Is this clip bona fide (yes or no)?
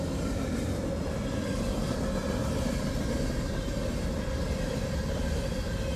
yes